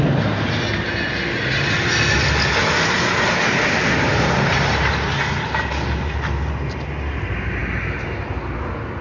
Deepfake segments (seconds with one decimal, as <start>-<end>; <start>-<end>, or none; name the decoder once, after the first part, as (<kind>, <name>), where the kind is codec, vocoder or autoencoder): none